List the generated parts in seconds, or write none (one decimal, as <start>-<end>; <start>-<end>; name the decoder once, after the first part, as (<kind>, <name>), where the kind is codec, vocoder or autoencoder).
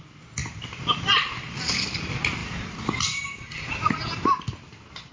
0.4-1.9 (vocoder, BigVGAN v2); 2.4-3.2